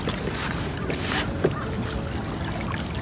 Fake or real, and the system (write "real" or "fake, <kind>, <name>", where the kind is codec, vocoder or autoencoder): real